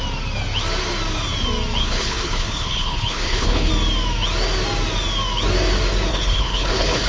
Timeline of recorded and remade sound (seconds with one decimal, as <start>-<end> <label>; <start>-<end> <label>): 0.0-1.8 recorded; 1.8-3.7 remade; 3.7-6.1 recorded; 6.1-7.1 remade